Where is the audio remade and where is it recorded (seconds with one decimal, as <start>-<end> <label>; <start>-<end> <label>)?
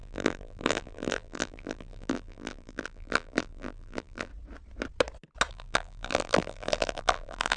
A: 0.0-4.3 remade; 4.3-5.5 recorded; 5.5-7.6 remade